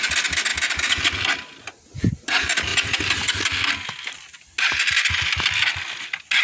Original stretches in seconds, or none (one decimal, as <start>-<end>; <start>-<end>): 0.0-6.4